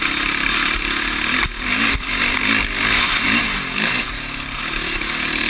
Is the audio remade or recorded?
recorded